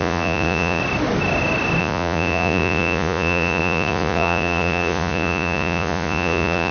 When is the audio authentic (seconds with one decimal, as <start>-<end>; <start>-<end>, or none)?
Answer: 0.8-1.8

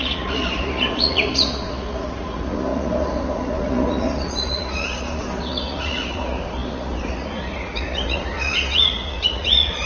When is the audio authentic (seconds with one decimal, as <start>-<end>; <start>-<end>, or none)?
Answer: none